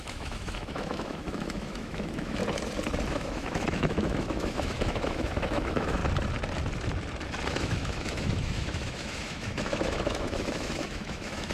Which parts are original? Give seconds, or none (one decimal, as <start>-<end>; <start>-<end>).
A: 2.4-3.1; 6.0-7.5